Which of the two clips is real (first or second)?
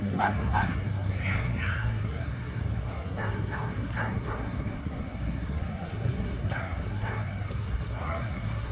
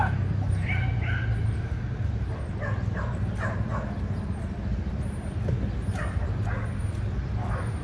second